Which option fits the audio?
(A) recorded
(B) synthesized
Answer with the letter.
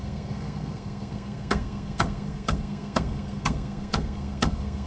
B